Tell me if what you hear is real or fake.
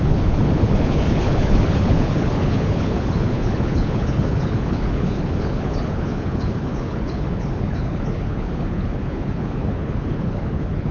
fake